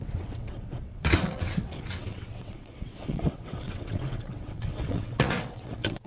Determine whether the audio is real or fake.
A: fake